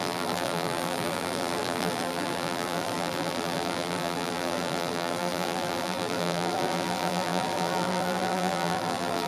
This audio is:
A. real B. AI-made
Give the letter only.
B